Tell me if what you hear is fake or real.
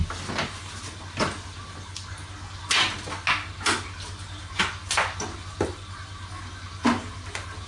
real